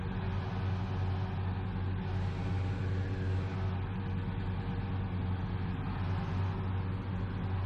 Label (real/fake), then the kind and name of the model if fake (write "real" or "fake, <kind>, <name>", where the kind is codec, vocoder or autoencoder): real